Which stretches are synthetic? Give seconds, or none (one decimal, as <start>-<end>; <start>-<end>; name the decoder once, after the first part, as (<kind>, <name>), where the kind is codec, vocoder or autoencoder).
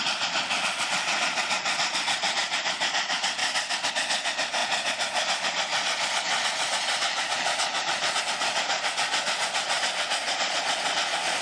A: 0.0-3.4 (vocoder, Vocos); 3.9-11.4